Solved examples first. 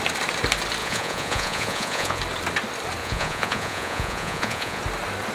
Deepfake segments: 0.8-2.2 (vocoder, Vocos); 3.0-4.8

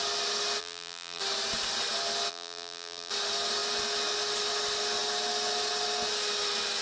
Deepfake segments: 0.6-1.2 (vocoder, BigVGAN v2); 2.3-3.1

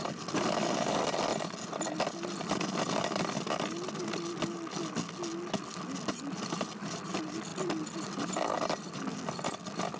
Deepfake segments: 0.0-1.3 (vocoder, BigVGAN v2); 6.1-10.0

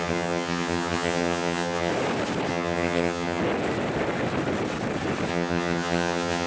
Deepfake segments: 0.0-1.9 (vocoder, HiFi-GAN); 2.5-3.4; 5.3-6.5

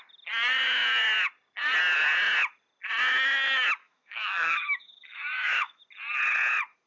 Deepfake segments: 3.8-5.8 (autoencoder, DAC-VAE)

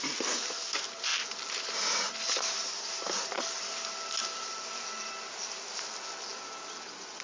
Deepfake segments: none